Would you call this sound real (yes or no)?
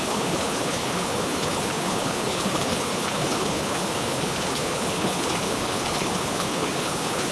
no